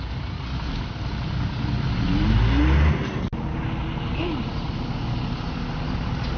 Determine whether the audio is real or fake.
real